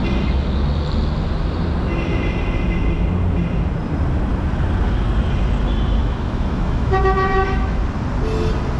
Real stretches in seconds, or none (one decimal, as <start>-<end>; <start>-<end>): 0.0-6.0; 7.8-8.8